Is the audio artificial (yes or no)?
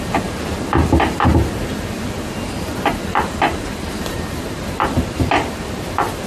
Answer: no